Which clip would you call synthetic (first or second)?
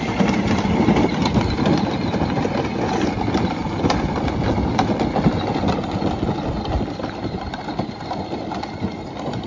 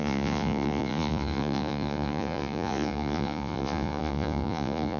second